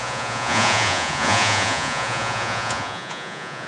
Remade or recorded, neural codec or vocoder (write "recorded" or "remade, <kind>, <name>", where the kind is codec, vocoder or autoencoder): remade, vocoder, Vocos